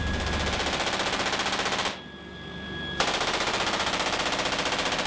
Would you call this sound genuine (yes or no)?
yes